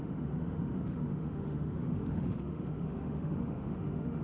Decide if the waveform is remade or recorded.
remade